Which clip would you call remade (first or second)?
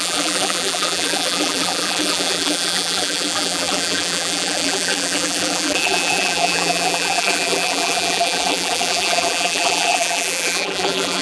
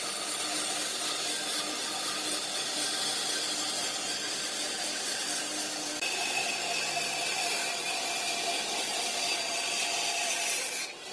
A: first